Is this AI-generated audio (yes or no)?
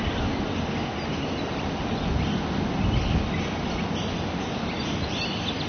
no